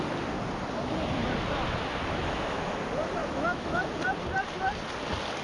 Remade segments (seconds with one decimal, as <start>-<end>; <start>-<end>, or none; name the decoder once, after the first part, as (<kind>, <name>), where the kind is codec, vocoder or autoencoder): 2.2-2.8 (autoencoder, DAC-VAE); 3.2-3.8